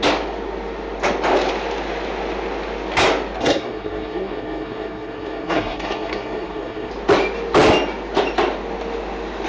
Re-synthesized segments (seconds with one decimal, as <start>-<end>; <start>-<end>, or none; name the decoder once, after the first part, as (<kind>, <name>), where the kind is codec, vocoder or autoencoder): 3.4-6.9 (codec, SNAC)